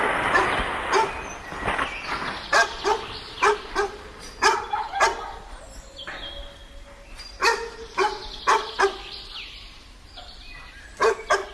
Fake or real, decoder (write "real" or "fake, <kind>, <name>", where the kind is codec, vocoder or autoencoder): real